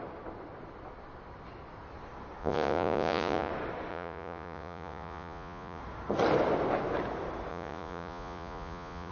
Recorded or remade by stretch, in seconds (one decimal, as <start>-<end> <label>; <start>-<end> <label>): 0.0-2.4 recorded; 2.4-3.5 remade; 3.5-3.9 recorded; 3.9-5.8 remade; 5.8-7.5 recorded; 7.5-9.1 remade